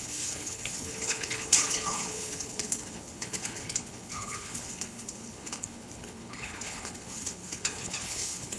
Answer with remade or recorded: remade